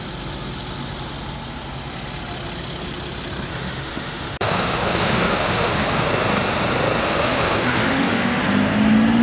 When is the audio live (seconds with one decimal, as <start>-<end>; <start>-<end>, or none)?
0.0-3.5; 6.1-7.0; 8.4-9.2